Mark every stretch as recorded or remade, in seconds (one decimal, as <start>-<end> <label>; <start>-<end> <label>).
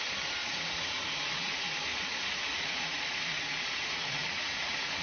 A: 0.0-0.4 recorded; 0.4-1.5 remade; 1.5-1.9 recorded; 1.9-5.0 remade